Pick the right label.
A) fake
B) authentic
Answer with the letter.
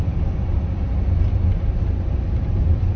B